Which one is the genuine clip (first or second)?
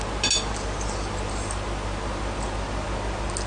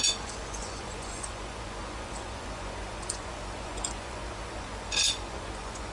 first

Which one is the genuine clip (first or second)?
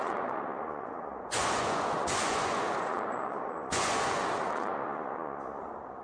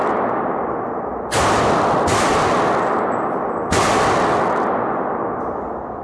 second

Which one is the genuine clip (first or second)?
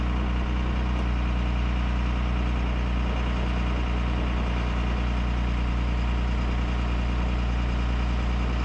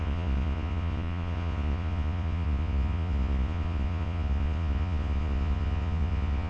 first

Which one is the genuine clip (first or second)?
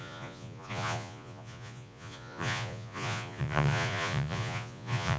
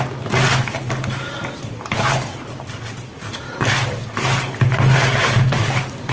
second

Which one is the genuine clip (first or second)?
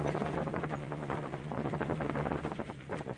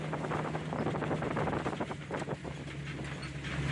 second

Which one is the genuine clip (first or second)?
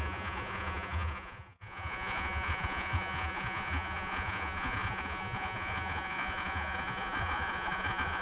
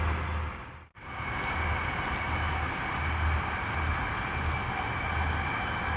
second